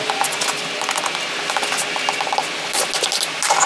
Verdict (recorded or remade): recorded